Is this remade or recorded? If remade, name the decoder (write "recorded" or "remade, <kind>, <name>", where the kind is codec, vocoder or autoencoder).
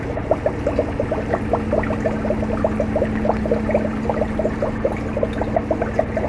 recorded